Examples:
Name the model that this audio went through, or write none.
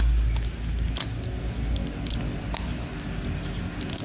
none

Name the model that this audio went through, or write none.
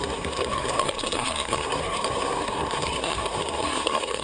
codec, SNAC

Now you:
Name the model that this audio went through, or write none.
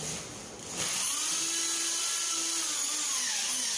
none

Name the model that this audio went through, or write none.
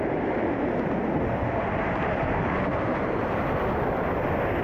none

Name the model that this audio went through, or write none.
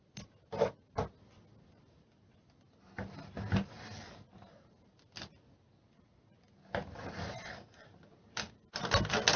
none